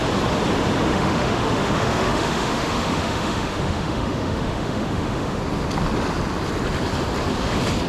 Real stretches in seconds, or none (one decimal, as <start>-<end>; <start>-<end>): 0.0-0.9; 5.4-7.9